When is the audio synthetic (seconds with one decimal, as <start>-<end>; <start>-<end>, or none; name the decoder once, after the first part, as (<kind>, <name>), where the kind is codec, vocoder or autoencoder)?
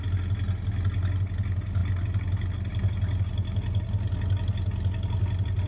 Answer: none